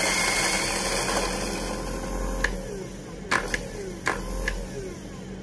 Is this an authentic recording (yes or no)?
yes